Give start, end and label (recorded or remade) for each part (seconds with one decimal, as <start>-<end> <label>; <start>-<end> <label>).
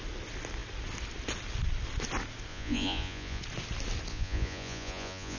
0.0-2.5 recorded; 2.5-3.4 remade; 3.4-4.1 recorded; 4.1-5.4 remade